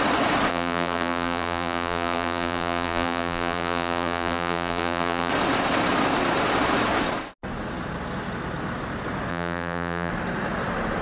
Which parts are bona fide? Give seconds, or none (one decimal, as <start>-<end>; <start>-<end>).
0.0-0.5; 5.3-9.3; 10.1-11.0